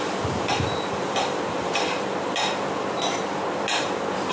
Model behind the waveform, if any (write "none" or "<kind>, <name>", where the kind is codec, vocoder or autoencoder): none